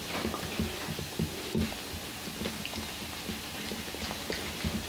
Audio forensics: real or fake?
real